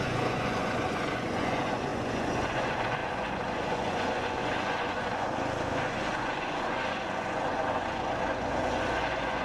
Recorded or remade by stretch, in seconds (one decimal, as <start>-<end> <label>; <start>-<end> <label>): 0.0-9.4 remade